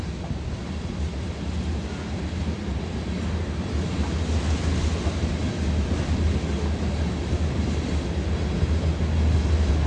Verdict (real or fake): real